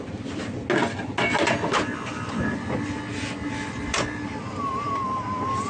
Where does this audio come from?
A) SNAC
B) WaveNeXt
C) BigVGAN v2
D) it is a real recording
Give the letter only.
D